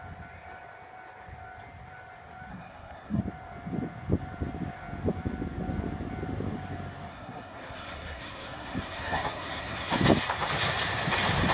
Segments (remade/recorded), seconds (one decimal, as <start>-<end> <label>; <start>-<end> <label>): 0.0-2.5 recorded; 2.5-3.2 remade; 3.2-7.1 recorded; 7.1-9.9 remade; 9.9-11.5 recorded